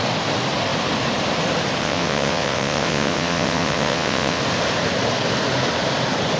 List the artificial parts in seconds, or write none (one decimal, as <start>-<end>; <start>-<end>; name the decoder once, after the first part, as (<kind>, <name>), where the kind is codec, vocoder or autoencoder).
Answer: 1.8-4.4 (vocoder, WaveNeXt)